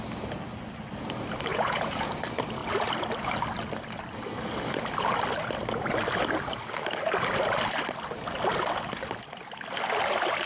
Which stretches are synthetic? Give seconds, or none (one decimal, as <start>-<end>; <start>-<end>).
1.5-2.1